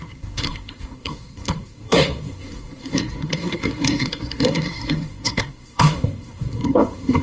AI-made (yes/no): yes